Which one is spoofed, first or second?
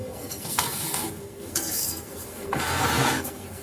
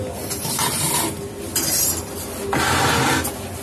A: first